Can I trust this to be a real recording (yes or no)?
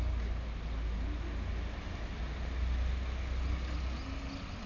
yes